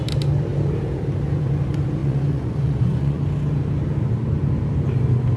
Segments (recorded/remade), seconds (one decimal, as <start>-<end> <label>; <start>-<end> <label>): 0.0-2.0 recorded; 2.0-3.2 remade; 3.2-5.4 recorded